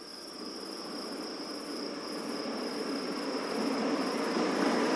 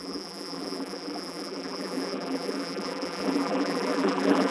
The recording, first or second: first